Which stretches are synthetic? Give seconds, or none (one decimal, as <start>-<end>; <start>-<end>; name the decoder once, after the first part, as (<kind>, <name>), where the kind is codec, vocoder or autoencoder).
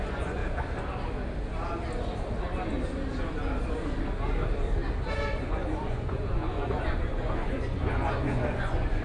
0.0-0.4 (vocoder, Vocos); 5.5-9.0